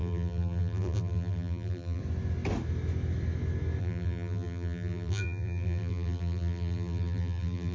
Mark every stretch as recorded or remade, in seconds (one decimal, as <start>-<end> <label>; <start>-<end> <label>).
0.0-2.0 remade; 2.0-3.8 recorded; 3.8-7.7 remade